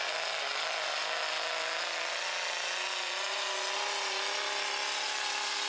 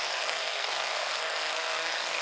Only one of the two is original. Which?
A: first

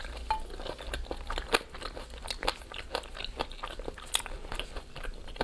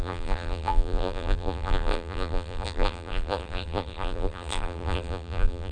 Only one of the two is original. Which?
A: first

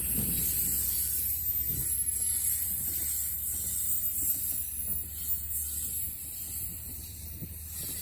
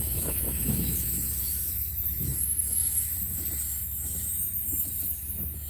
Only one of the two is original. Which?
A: first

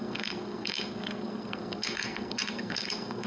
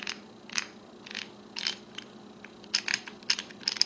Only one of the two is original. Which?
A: second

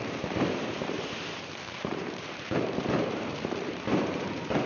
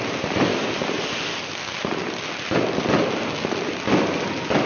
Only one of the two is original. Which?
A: second